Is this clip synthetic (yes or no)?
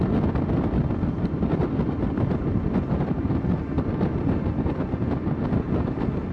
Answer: no